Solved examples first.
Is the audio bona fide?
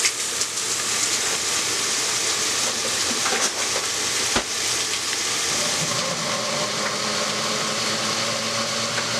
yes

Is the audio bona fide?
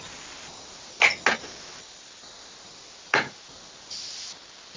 yes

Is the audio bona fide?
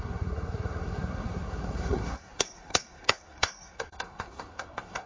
no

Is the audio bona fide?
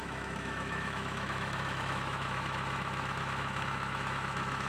no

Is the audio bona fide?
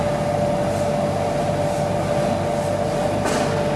yes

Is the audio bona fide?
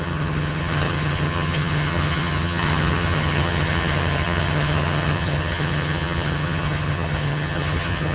no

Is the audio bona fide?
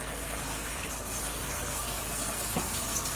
no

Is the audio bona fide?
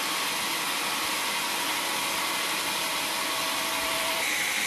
yes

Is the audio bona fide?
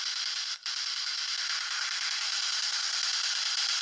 no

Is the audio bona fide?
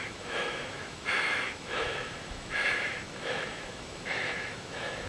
no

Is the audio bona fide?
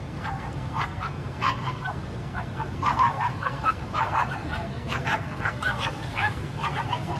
no